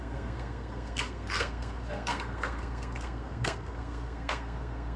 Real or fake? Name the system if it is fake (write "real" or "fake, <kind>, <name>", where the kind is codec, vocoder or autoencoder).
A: fake, codec, SNAC